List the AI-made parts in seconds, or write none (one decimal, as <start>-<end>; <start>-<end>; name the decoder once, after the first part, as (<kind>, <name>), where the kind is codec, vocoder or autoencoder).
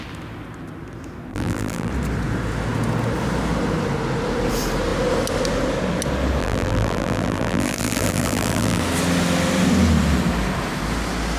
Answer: 1.3-1.9 (vocoder, BigVGAN v2); 6.4-8.8